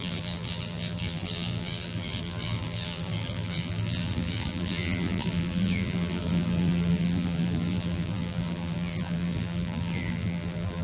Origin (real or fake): fake